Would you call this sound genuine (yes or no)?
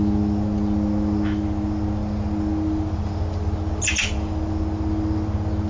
yes